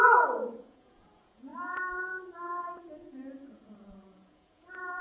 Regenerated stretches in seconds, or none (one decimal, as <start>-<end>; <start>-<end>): 0.0-1.5; 2.8-5.0

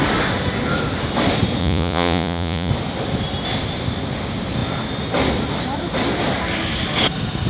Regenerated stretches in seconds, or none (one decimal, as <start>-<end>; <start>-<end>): 1.6-2.7